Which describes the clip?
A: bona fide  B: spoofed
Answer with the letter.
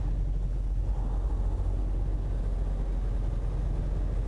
A